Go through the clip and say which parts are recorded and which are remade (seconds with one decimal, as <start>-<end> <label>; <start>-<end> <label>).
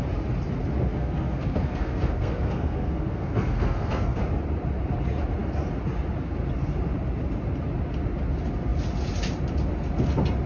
0.0-0.9 recorded; 0.9-4.2 remade; 4.2-10.5 recorded